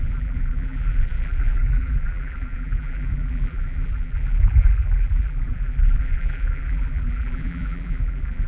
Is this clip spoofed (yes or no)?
yes